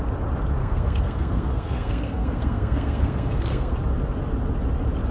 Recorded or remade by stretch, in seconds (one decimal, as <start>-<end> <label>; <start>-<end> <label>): 0.0-0.6 recorded; 0.6-3.7 remade; 3.7-5.1 recorded